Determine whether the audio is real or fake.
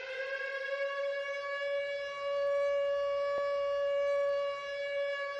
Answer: real